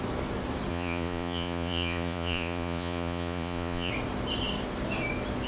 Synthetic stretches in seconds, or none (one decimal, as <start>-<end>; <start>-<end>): 0.7-3.9